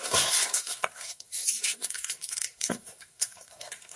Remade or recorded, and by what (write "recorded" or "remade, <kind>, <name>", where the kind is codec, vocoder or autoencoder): remade, codec, SNAC